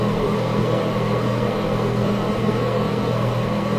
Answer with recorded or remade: remade